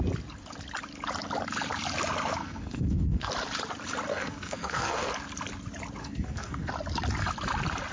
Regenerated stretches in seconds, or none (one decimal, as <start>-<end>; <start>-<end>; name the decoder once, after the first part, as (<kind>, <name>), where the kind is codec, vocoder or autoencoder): 2.4-3.3 (codec, SNAC); 4.1-5.1; 6.0-6.7